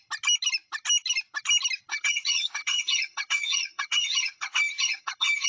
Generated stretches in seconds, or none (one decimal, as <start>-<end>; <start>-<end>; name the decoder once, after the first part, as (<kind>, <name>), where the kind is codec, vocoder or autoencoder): 1.9-5.5 (vocoder, HiFi-GAN)